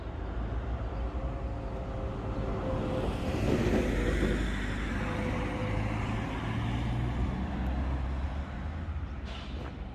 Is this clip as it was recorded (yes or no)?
yes